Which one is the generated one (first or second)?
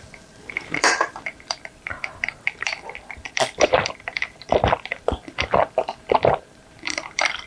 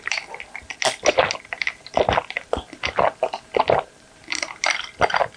first